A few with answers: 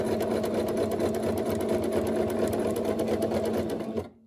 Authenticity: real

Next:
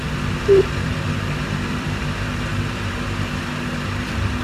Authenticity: fake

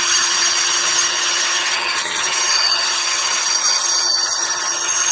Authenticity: fake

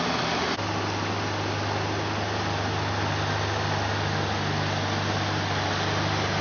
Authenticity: real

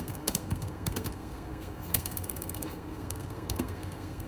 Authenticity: fake